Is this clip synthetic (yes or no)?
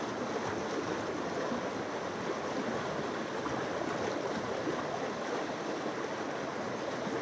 no